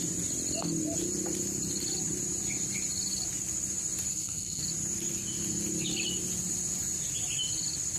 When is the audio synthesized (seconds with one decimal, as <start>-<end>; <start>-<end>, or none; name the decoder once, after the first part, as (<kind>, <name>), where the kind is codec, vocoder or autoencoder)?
4.1-4.6 (codec, SNAC)